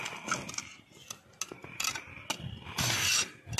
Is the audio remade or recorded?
recorded